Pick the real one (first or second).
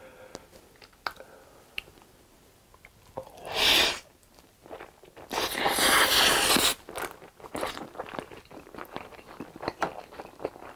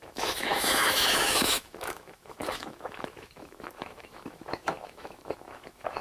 first